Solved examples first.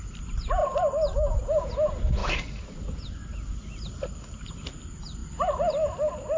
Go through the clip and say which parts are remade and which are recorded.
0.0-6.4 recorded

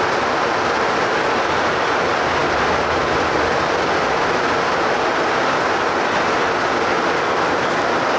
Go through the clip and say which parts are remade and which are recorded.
0.0-8.2 recorded

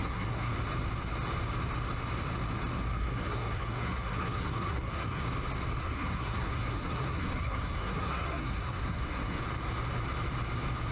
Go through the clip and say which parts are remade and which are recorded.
0.0-0.5 remade; 0.5-2.9 recorded; 2.9-5.2 remade; 5.2-5.8 recorded; 5.8-9.4 remade; 9.4-10.9 recorded